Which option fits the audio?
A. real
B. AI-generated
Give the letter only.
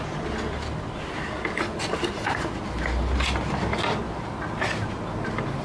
A